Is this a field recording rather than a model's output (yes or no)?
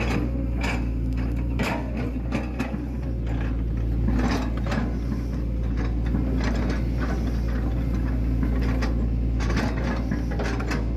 yes